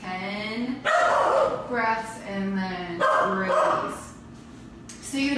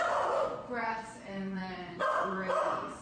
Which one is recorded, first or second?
first